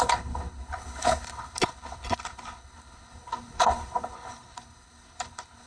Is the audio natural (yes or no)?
no